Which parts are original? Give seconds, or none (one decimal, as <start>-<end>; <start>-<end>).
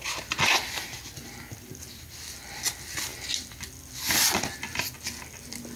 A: 0.0-5.8